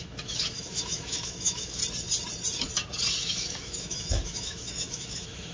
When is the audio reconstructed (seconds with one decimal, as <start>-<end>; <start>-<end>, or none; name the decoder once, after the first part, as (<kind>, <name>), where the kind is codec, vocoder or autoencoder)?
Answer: 0.0-1.8 (autoencoder, DAC-VAE); 3.2-5.5

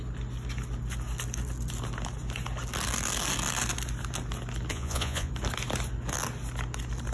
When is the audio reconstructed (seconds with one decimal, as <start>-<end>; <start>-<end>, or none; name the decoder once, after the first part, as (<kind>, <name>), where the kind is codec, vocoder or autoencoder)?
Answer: 4.7-5.3 (vocoder, Vocos)

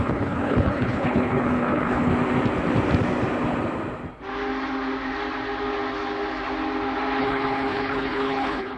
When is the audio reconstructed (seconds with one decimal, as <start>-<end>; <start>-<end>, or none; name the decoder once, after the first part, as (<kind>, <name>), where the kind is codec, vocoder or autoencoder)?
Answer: 0.0-2.1 (codec, HILCodec); 7.2-8.8

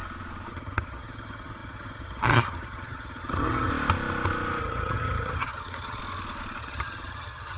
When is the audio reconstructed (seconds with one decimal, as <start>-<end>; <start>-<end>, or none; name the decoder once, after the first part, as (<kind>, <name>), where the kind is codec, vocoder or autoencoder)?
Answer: 0.5-3.7 (vocoder, HiFi-GAN); 4.6-6.0; 6.6-7.6

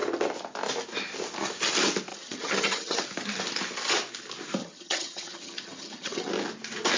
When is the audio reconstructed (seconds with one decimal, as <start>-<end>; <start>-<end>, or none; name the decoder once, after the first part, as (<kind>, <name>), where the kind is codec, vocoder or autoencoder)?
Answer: 2.1-3.0 (vocoder, HiFi-GAN); 4.6-6.3

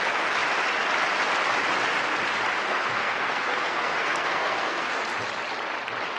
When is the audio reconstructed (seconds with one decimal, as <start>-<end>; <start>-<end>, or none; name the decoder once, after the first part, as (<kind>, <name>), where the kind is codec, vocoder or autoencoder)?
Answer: 2.7-4.9 (codec, SNAC)